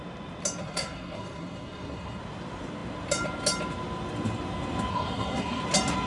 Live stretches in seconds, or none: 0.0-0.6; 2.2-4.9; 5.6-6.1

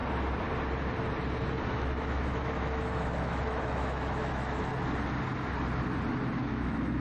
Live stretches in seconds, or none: 0.0-1.7; 4.7-6.4

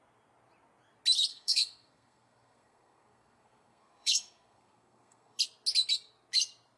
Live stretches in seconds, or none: 0.0-1.3; 5.4-6.8

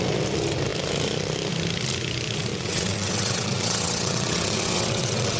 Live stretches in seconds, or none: 0.0-2.5

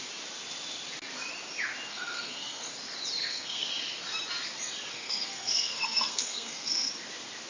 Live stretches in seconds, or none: 0.0-1.9; 2.7-3.2; 3.7-4.9; 6.9-7.5

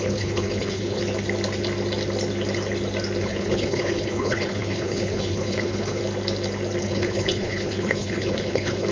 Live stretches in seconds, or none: 1.0-3.2; 6.0-6.8

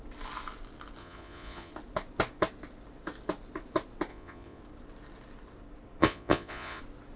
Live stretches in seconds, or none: 0.0-1.0; 1.7-4.1; 4.6-6.0; 6.8-7.2

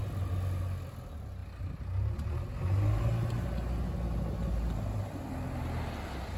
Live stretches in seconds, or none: 0.0-6.4